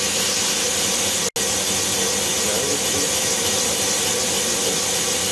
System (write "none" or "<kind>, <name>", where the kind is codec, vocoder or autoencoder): none